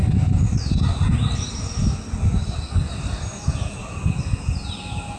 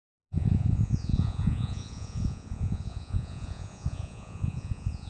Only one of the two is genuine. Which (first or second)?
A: first